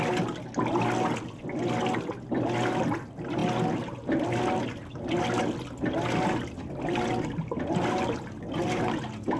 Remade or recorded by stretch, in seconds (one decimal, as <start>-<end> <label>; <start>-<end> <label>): 0.0-9.4 recorded